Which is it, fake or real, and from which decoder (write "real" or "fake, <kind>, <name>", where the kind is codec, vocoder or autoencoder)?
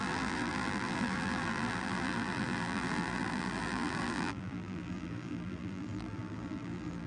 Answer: fake, vocoder, BigVGAN v2